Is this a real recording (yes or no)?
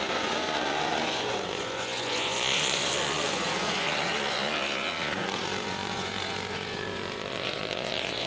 no